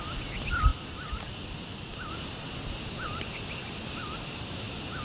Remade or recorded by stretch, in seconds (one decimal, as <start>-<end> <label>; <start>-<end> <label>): 0.0-0.7 recorded; 0.7-2.1 remade; 2.1-5.0 recorded